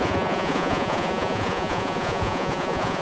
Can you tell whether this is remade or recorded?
remade